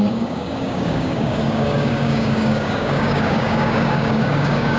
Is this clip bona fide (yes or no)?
no